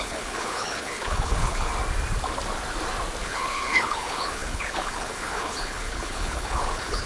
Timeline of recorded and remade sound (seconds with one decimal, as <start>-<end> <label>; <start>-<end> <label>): 0.0-1.7 remade; 1.7-3.2 recorded; 3.2-7.1 remade

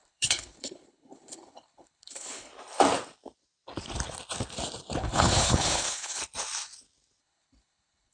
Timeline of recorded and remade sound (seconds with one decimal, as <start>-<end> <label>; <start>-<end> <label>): 0.0-2.5 remade; 2.5-5.0 recorded; 5.0-6.2 remade; 6.2-7.2 recorded; 7.2-8.1 remade